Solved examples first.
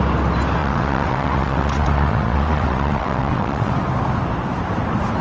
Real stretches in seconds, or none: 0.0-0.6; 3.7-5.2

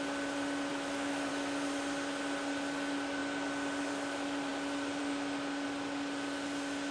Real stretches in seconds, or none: 0.0-0.7; 1.3-6.9

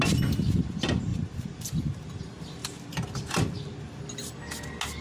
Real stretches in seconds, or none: 0.0-1.1; 2.2-2.6; 4.0-5.0

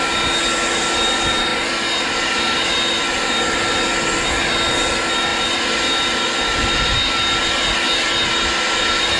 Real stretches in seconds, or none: 0.0-9.2

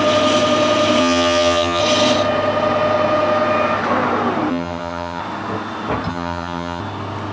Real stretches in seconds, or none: 0.0-1.0; 1.8-4.5; 5.2-6.1; 6.8-7.3

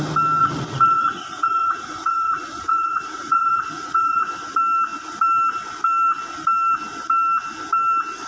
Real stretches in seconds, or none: 0.0-0.4; 4.3-8.3

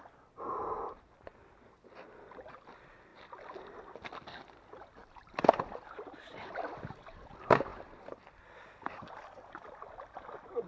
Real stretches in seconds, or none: 0.0-10.7